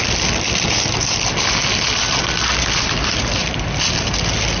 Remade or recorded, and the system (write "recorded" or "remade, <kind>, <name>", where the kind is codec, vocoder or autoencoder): recorded